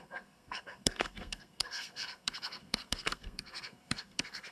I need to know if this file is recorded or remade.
remade